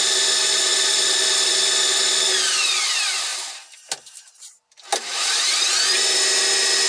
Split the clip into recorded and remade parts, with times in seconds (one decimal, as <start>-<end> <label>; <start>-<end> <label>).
0.0-6.9 recorded